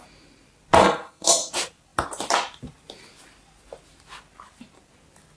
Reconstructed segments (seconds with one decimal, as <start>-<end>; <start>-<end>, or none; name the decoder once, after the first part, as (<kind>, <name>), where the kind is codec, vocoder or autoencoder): 0.8-1.5 (codec, SNAC)